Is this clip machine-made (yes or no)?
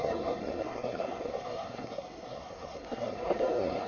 yes